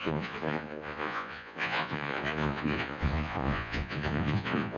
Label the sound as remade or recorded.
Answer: remade